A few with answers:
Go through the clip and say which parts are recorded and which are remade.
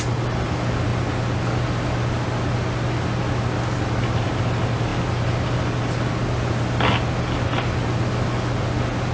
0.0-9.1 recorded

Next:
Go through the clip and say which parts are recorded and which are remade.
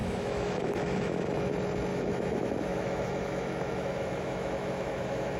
0.0-1.5 remade; 1.5-1.9 recorded; 1.9-5.4 remade